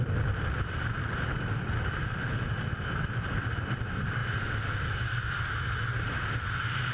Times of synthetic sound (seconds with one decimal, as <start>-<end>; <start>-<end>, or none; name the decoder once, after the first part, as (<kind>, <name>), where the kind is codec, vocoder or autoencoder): 0.0-4.2 (vocoder, BigVGAN v2)